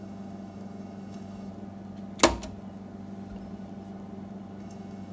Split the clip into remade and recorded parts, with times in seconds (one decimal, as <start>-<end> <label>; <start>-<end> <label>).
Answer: 0.0-1.5 remade; 1.5-4.6 recorded; 4.6-5.1 remade